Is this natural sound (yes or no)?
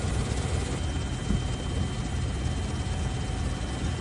yes